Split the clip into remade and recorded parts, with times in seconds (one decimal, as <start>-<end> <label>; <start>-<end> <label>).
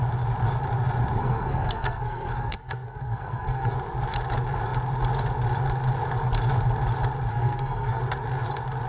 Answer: 0.0-1.2 recorded; 1.2-3.7 remade; 3.7-7.3 recorded; 7.3-8.0 remade; 8.0-8.9 recorded